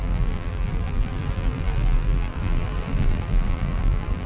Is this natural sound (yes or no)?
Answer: no